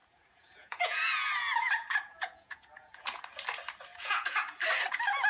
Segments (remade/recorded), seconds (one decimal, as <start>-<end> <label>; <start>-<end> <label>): 0.0-3.2 remade; 3.2-3.9 recorded; 3.9-4.6 remade; 4.6-5.3 recorded